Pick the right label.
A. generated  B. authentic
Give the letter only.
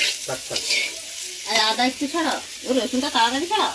B